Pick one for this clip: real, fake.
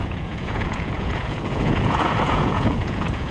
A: fake